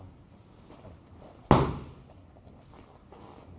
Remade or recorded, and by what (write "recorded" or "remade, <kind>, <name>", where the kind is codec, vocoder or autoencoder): recorded